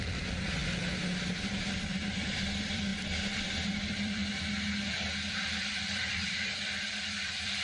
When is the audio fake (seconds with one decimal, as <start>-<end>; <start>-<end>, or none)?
0.0-0.6; 1.7-2.9; 3.7-4.2; 5.1-7.6